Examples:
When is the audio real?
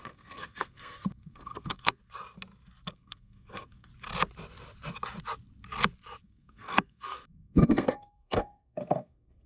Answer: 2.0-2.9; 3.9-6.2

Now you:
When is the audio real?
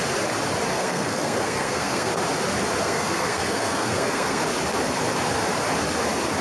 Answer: 0.0-0.7; 2.1-2.8; 4.4-6.4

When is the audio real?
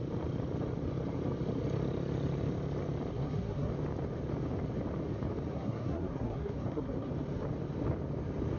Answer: 0.0-3.1; 3.7-5.5; 7.1-8.6